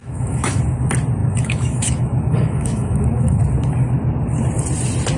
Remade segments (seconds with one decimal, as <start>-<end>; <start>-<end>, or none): 0.0-0.6; 1.2-3.4